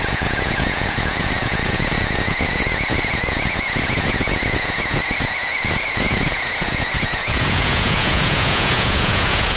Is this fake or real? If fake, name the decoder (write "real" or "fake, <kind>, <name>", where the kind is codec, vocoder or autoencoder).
fake, vocoder, Vocos